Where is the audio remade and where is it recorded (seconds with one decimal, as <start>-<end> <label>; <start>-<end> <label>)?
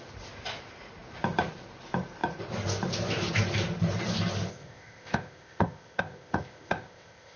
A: 0.0-4.5 recorded; 4.5-7.4 remade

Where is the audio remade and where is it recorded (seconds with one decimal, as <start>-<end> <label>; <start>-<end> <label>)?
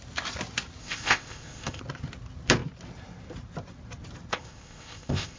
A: 0.0-0.8 recorded; 0.8-1.8 remade; 1.8-4.3 recorded; 4.3-5.4 remade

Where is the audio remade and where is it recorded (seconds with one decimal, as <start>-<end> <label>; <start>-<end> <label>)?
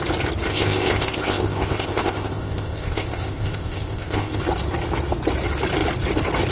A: 0.0-0.5 recorded; 0.5-4.4 remade; 4.4-6.5 recorded